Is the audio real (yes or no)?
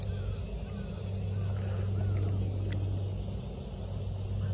yes